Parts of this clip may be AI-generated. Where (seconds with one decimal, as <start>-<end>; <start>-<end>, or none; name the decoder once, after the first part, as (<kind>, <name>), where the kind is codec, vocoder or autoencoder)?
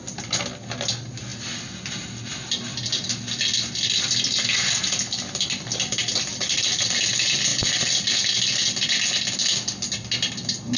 6.0-7.1 (vocoder, BigVGAN v2)